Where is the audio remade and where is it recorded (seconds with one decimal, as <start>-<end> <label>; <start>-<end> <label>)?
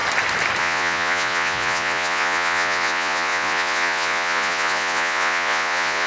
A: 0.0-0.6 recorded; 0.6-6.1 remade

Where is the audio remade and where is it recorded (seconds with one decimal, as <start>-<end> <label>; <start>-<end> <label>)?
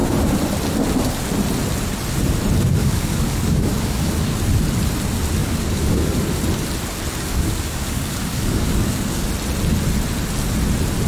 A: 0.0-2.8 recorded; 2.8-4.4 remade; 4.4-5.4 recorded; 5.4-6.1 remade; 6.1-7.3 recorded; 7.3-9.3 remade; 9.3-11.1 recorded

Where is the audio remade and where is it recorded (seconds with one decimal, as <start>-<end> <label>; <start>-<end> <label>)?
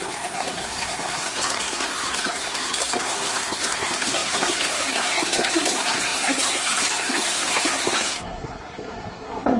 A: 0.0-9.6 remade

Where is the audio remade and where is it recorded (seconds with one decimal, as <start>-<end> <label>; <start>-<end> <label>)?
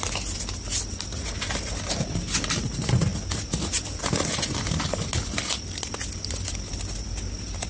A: 0.0-7.7 recorded